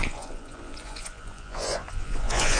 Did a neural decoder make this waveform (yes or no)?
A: yes